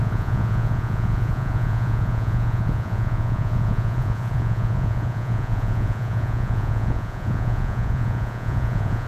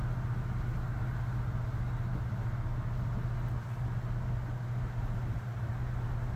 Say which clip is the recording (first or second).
second